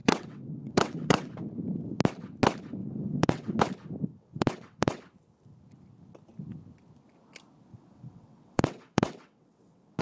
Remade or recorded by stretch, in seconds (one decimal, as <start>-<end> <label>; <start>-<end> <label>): 0.0-1.3 remade; 1.3-2.8 recorded; 2.8-3.6 remade; 3.6-4.1 recorded; 4.1-5.0 remade; 5.0-7.7 recorded; 7.7-10.0 remade